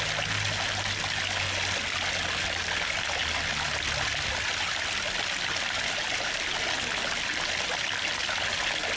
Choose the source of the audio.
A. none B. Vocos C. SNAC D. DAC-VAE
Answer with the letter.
A